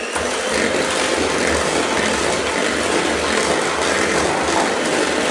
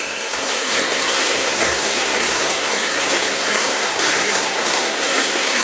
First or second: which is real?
first